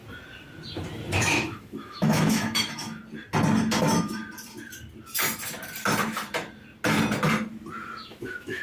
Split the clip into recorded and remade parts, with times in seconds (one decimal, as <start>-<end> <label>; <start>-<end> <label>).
0.0-1.2 recorded; 1.2-3.0 remade; 3.0-3.8 recorded; 3.8-4.2 remade; 4.2-8.1 recorded; 8.1-8.6 remade